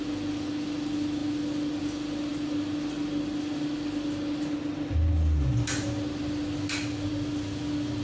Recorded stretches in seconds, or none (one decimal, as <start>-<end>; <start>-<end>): 0.0-8.0